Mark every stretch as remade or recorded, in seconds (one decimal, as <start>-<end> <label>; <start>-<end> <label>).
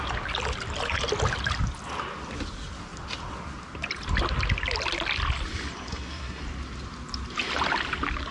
0.0-5.9 recorded; 5.9-6.4 remade; 6.4-8.3 recorded